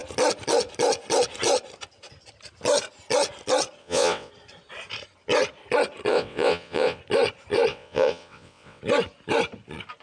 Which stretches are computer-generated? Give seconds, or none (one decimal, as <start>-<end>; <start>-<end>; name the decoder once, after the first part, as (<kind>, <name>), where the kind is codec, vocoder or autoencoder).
3.8-4.3 (vocoder, WaveNeXt); 6.1-7.0; 7.7-8.8